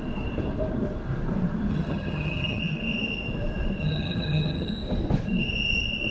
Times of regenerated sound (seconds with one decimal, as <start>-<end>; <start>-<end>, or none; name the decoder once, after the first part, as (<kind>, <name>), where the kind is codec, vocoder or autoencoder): 1.7-2.6 (vocoder, HiFi-GAN); 3.8-4.7